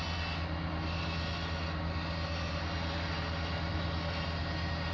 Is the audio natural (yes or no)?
yes